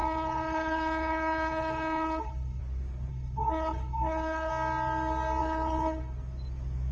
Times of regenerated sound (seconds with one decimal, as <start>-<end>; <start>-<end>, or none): 0.0-2.6; 3.1-4.5; 5.4-6.0